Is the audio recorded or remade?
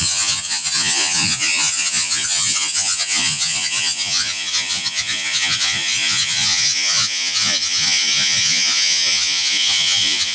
remade